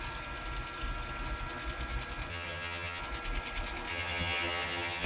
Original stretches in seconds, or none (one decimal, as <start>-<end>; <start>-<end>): 0.0-2.3; 3.0-3.9